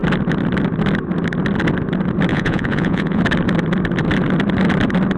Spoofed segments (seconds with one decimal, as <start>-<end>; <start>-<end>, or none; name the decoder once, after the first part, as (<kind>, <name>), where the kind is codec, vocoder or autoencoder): 2.3-3.2 (vocoder, Vocos)